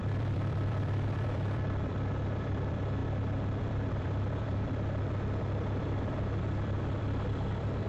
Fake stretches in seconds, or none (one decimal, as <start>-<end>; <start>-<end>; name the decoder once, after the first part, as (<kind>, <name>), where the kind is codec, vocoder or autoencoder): 0.0-3.0 (vocoder, BigVGAN v2); 3.6-7.9